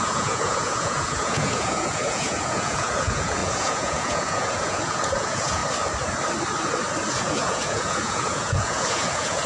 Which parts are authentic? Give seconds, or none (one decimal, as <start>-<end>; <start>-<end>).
5.6-7.1